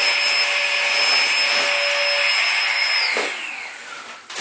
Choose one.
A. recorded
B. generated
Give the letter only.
A